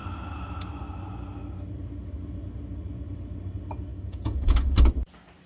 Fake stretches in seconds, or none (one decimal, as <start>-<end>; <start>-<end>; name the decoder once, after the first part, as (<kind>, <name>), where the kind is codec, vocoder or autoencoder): 3.9-4.7 (vocoder, Vocos)